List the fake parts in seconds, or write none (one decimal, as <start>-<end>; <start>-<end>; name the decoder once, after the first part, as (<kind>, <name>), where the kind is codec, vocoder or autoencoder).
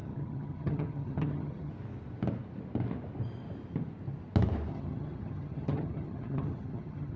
0.0-1.7 (vocoder, HiFi-GAN); 4.7-7.2